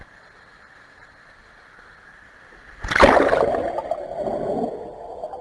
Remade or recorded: recorded